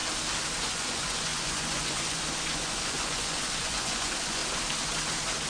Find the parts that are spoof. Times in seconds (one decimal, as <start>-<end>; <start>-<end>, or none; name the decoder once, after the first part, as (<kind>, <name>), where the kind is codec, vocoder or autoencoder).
0.6-4.4 (vocoder, Vocos)